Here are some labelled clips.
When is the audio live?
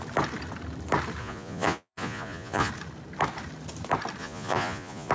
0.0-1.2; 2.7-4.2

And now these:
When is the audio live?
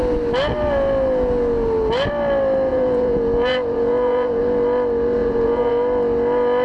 0.0-2.7; 4.4-5.2; 5.7-6.6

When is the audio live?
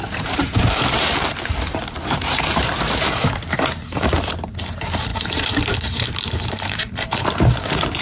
none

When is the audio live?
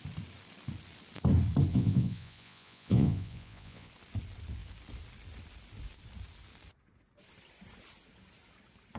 0.0-1.7; 3.9-9.0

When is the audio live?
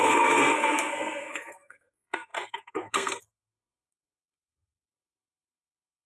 none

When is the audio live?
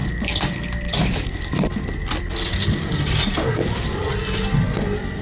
3.1-5.2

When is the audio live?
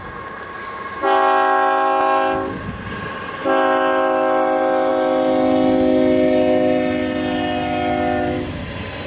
0.0-9.1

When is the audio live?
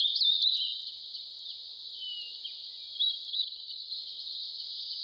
0.0-3.3; 3.9-5.0